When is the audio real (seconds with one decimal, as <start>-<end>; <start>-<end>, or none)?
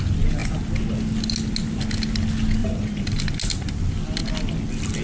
0.0-2.6; 3.2-5.0